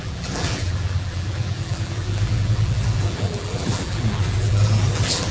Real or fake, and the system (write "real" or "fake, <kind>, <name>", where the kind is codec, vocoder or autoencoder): fake, vocoder, BigVGAN v2